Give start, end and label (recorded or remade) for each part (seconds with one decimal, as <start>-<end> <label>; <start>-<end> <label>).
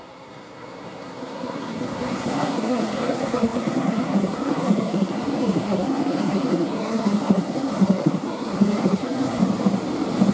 0.0-9.4 remade; 9.4-10.3 recorded